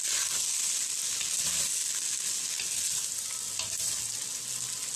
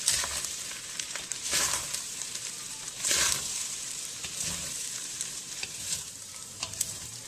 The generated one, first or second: second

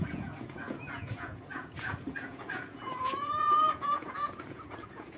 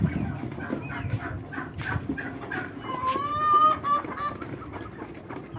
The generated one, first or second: first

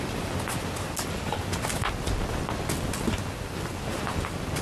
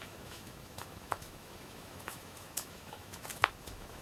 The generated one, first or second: second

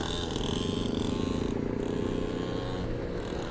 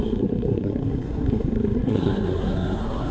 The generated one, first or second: second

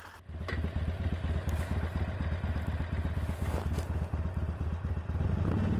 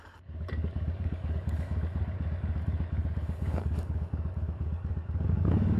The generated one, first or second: second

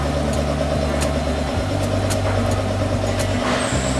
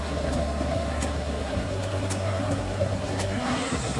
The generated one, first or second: second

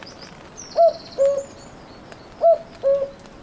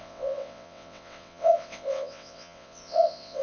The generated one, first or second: second